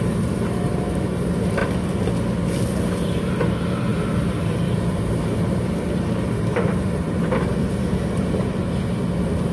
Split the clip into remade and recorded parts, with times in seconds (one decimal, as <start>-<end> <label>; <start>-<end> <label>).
0.0-1.6 remade; 1.6-2.7 recorded; 2.7-9.5 remade